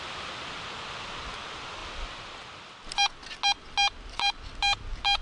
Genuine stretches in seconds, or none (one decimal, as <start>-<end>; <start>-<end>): 0.0-5.2